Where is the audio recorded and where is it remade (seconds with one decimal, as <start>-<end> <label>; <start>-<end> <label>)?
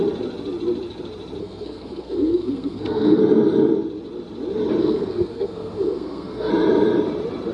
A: 0.0-1.4 recorded; 1.4-3.2 remade; 3.2-4.8 recorded; 4.8-6.5 remade; 6.5-7.5 recorded